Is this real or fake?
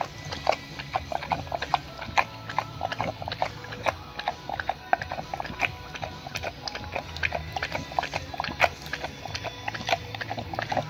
real